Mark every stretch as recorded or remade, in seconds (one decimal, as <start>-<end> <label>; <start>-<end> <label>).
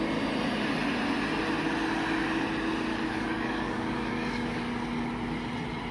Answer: 0.0-2.9 recorded; 2.9-4.7 remade; 4.7-5.9 recorded